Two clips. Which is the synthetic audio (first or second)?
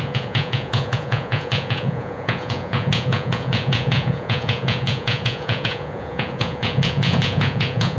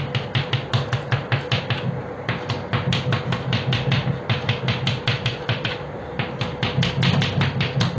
first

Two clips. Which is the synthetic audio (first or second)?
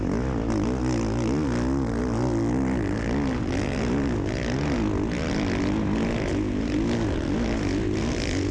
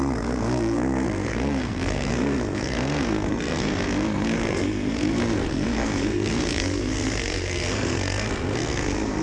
second